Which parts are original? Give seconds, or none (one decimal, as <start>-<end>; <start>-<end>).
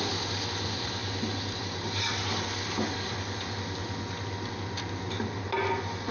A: 0.0-6.1